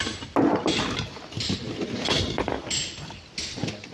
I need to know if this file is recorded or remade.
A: recorded